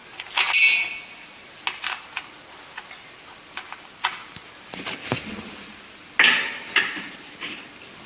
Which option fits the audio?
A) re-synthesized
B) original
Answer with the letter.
B